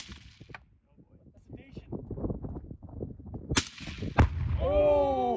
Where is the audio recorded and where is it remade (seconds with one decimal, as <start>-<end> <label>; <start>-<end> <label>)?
0.0-5.4 recorded